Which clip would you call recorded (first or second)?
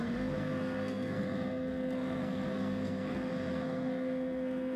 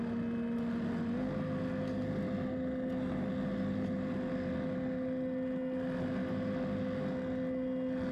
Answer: second